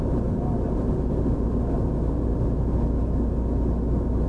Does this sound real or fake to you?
real